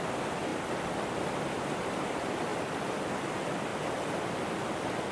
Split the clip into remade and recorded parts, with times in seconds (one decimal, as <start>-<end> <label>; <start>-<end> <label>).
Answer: 0.0-5.1 recorded

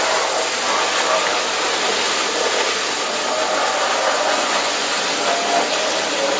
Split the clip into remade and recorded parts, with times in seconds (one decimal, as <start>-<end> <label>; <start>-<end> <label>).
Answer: 0.0-4.0 recorded; 4.0-4.9 remade; 4.9-6.4 recorded